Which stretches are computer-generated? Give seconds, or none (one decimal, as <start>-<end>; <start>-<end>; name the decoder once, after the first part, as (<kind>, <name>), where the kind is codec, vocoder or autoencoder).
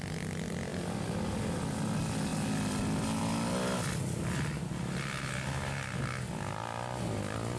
none